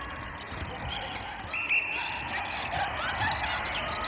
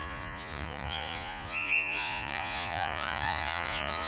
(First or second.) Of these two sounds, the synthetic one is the second